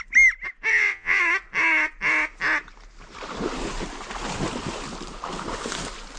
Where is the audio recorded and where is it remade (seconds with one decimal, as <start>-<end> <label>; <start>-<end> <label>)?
0.0-0.7 recorded; 0.7-1.2 remade; 1.2-6.2 recorded